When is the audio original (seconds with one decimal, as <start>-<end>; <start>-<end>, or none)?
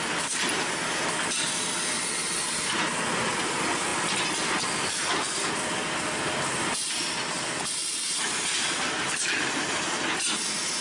0.0-10.8